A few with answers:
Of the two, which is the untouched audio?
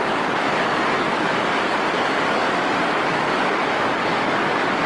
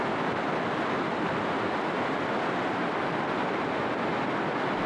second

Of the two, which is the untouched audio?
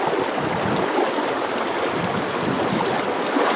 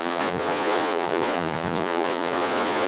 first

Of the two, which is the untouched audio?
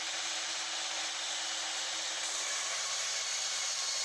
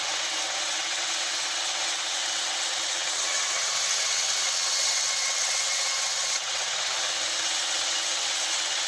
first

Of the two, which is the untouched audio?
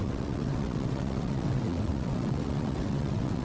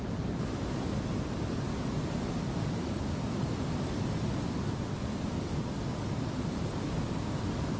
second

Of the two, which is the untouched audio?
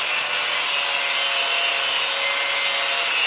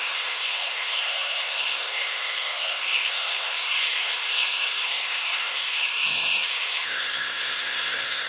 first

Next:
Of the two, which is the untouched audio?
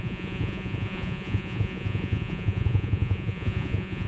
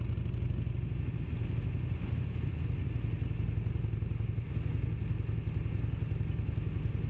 second